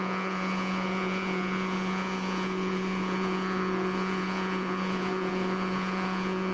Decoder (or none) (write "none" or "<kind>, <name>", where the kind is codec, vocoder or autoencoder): vocoder, Vocos